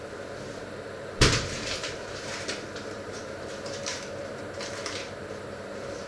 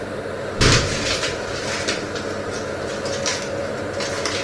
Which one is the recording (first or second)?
second